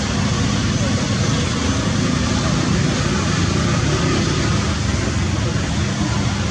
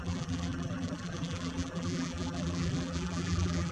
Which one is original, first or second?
first